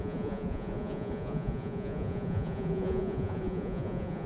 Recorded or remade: remade